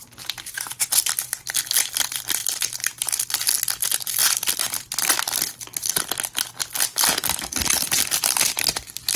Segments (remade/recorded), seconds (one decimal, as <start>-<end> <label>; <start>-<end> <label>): 0.0-2.4 recorded; 2.4-3.2 remade; 3.2-9.2 recorded